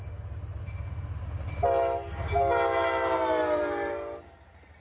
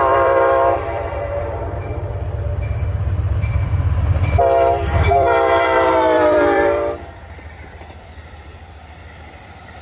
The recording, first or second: first